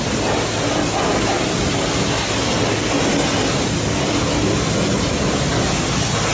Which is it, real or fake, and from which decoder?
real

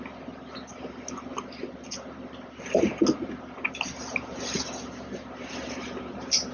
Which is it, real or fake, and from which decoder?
real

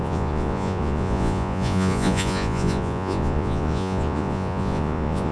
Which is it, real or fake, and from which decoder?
fake, vocoder, Vocos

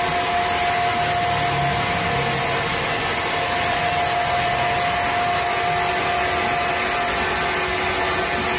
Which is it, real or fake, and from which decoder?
real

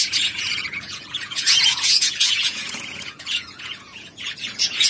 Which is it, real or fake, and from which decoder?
fake, vocoder, Vocos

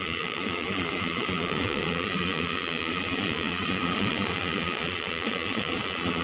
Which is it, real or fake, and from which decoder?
fake, vocoder, Vocos